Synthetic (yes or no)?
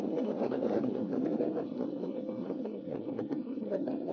yes